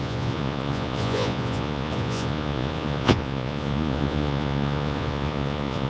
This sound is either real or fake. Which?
fake